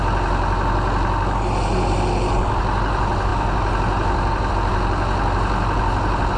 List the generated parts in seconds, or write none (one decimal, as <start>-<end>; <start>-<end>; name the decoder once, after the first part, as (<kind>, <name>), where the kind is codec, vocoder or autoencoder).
none